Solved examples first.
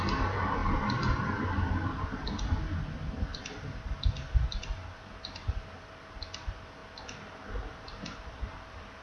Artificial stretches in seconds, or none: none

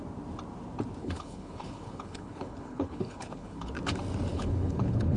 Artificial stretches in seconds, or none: 1.0-3.7; 4.3-5.2

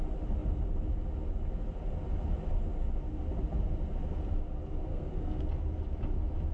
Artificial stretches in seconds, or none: 4.9-5.4

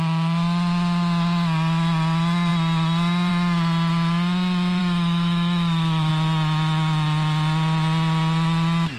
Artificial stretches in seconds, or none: 4.8-6.1